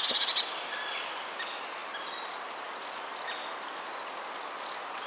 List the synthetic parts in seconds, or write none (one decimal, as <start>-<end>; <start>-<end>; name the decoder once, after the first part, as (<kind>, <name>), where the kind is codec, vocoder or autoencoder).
none